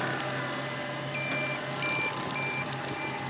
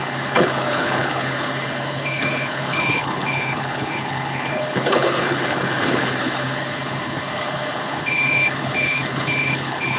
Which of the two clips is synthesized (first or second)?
second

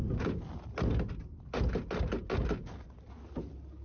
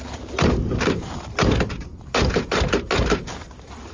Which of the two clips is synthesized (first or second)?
second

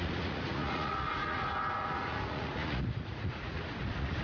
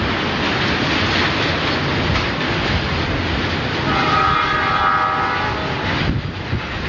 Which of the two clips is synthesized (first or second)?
first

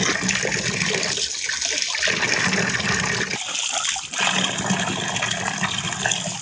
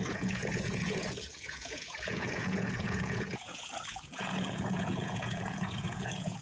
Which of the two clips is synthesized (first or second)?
second